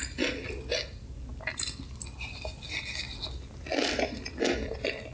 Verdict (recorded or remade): recorded